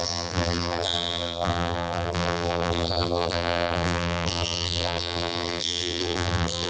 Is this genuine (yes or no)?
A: no